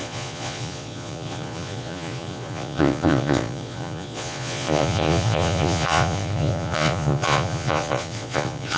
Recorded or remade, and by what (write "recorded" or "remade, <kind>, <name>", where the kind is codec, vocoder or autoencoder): remade, vocoder, Vocos